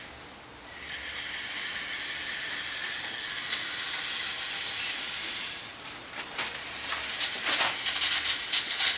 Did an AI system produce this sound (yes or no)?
no